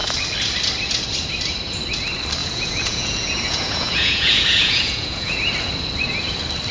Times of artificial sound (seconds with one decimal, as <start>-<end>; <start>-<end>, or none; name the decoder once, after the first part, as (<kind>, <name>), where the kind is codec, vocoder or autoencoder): 2.4-5.4 (vocoder, Vocos)